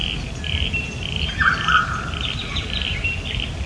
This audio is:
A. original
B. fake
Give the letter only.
A